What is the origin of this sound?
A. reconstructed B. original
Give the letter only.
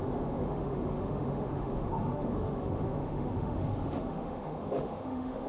A